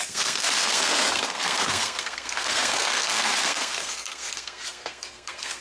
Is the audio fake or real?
fake